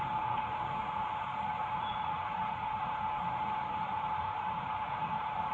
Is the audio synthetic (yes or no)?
yes